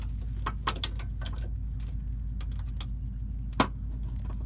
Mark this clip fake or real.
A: real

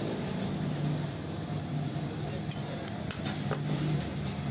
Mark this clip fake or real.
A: real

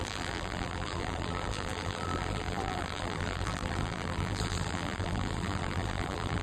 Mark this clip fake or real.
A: fake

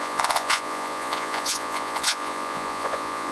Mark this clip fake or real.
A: fake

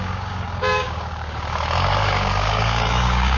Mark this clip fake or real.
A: fake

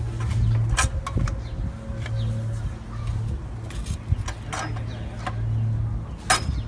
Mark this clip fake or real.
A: real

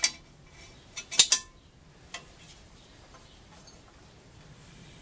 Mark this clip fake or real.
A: real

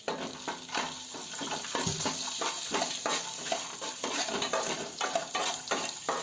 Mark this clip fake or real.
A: real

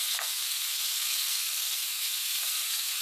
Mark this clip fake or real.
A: fake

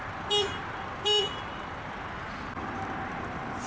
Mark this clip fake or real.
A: real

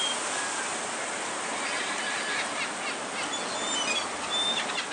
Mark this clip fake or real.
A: real